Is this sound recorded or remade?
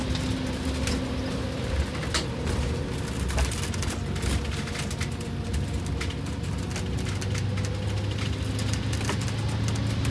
recorded